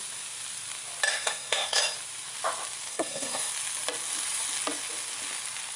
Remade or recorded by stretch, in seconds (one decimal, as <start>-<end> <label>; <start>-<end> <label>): 0.0-1.1 recorded; 1.1-1.8 remade; 1.8-2.9 recorded; 2.9-3.5 remade; 3.5-5.8 recorded